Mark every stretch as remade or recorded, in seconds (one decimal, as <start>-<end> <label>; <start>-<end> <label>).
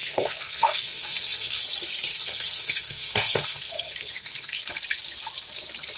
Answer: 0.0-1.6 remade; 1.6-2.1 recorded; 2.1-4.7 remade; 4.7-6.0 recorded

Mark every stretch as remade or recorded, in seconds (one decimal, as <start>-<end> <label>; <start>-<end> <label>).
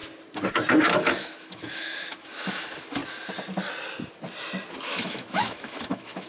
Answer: 0.0-0.8 recorded; 0.8-3.0 remade; 3.0-4.8 recorded; 4.8-6.3 remade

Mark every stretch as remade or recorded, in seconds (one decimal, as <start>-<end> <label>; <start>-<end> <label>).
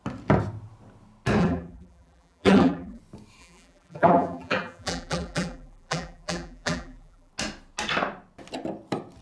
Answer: 0.0-1.4 recorded; 1.4-3.0 remade; 3.0-3.4 recorded; 3.4-7.3 remade; 7.3-9.2 recorded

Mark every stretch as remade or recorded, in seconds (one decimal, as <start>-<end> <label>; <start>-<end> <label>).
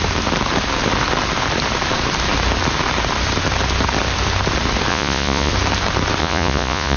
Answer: 0.0-4.9 recorded; 4.9-5.5 remade; 5.5-6.2 recorded; 6.2-7.0 remade